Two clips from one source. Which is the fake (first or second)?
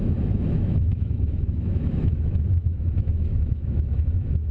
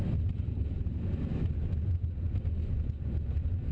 first